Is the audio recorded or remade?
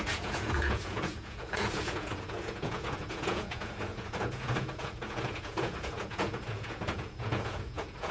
remade